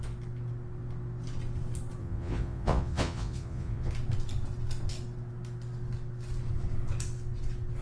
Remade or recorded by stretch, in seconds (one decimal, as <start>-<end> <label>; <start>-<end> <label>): 0.0-2.0 recorded; 2.0-3.9 remade; 3.9-7.8 recorded

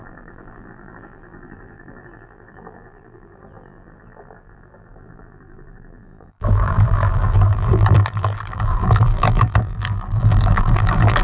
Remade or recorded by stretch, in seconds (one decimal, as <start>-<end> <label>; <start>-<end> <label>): 0.0-11.2 remade

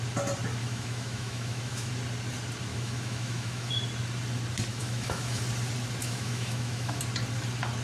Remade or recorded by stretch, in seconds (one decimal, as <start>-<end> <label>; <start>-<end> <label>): 0.0-0.6 recorded; 0.6-1.9 remade; 1.9-2.7 recorded; 2.7-3.7 remade; 3.7-4.7 recorded; 4.7-5.4 remade; 5.4-6.0 recorded; 6.0-7.0 remade; 7.0-7.8 recorded